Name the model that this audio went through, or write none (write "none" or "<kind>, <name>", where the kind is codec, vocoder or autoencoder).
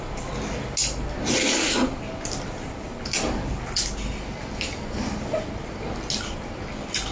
none